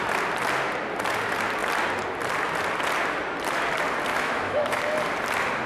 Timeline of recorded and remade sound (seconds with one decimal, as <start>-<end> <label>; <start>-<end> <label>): 0.0-4.1 recorded; 4.1-4.8 remade; 4.8-5.7 recorded